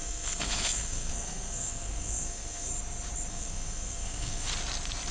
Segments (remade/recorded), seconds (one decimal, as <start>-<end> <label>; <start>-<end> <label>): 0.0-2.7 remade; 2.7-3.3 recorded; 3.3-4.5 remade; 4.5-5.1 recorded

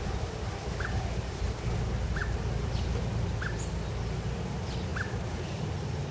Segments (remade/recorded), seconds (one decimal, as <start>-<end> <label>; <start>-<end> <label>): 0.0-6.1 recorded

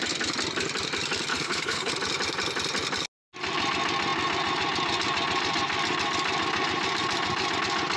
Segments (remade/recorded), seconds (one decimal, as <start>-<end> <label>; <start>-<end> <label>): 0.0-1.3 recorded; 1.3-1.9 remade; 1.9-8.0 recorded

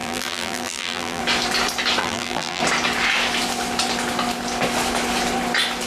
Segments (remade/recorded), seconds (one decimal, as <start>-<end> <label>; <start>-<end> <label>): 0.0-1.2 remade; 1.2-2.0 recorded; 2.0-2.6 remade; 2.6-5.9 recorded

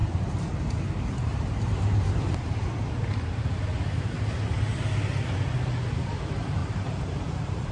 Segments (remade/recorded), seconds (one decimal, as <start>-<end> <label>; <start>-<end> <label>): 0.0-3.1 remade; 3.1-6.6 recorded; 6.6-7.7 remade

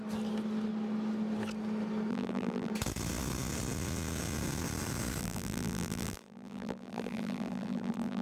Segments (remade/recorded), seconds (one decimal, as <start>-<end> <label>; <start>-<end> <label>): 0.0-2.1 recorded; 2.1-2.7 remade; 2.7-5.2 recorded; 5.2-8.2 remade

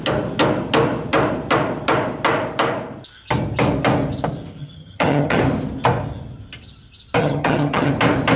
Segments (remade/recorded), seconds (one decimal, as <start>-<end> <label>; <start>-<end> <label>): 0.0-4.6 recorded; 4.6-5.4 remade; 5.4-7.2 recorded; 7.2-7.9 remade; 7.9-8.4 recorded